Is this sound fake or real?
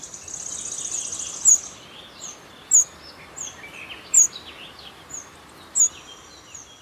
real